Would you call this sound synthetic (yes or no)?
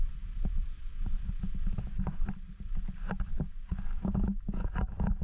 no